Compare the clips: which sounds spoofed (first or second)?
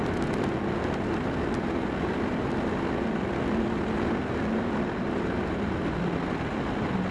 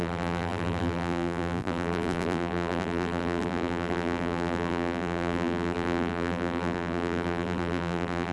second